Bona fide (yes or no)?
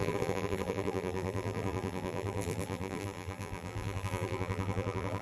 no